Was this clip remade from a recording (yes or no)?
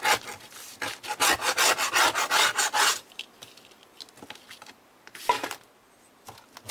no